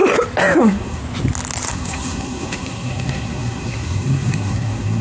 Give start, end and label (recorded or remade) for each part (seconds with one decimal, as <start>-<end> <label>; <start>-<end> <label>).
0.0-0.6 recorded; 0.6-1.0 remade; 1.0-1.7 recorded; 1.7-5.0 remade